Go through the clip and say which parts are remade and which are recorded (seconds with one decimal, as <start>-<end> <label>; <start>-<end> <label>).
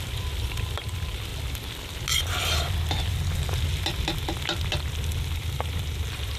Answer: 0.0-1.3 remade; 1.3-5.1 recorded; 5.1-6.4 remade